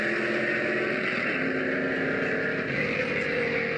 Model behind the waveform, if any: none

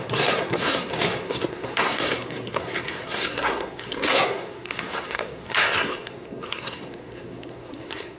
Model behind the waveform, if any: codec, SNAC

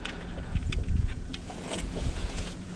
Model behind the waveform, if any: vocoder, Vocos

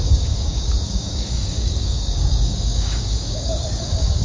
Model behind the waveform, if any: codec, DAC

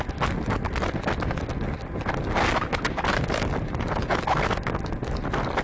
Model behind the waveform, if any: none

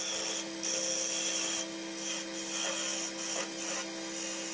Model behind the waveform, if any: none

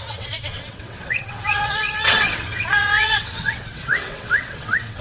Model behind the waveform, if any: vocoder, WaveNeXt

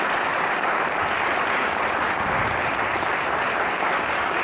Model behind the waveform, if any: none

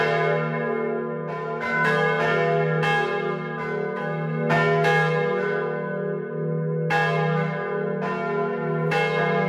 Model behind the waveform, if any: none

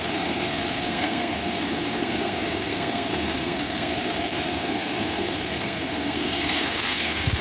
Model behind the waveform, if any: codec, SNAC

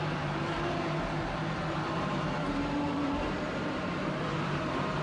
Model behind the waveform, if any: vocoder, BigVGAN v2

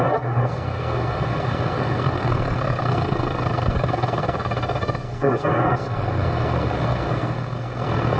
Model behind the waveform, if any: codec, SNAC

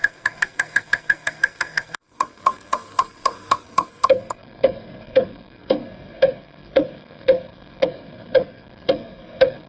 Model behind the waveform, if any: codec, SNAC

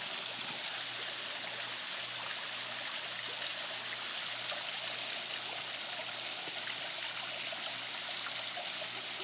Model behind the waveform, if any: none